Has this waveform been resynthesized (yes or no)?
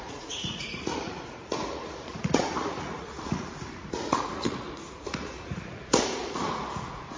yes